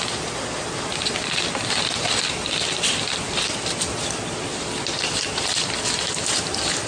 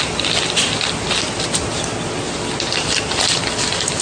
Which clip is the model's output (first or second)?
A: first